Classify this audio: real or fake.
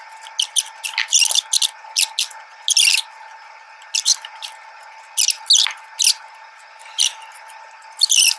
real